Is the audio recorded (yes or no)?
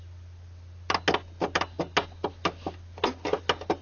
yes